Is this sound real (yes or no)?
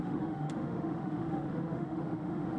no